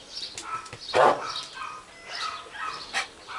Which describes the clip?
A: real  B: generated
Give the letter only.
A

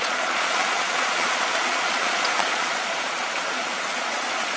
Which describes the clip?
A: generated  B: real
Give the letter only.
A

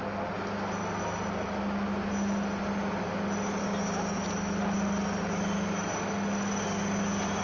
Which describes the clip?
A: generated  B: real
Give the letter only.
B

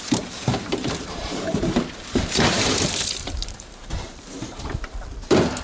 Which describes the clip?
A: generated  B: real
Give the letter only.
A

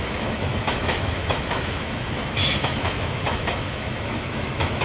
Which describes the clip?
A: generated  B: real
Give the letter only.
A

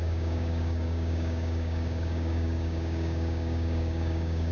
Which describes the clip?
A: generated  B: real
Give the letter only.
A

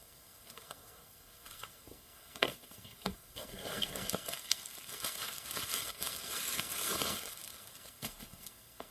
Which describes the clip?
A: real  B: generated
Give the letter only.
B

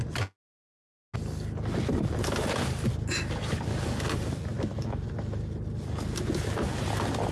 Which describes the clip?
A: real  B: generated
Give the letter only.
A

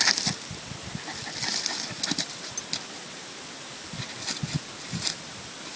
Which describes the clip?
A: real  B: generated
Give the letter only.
A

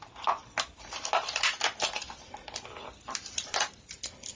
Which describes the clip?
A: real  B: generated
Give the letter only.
A